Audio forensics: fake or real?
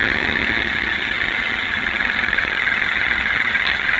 fake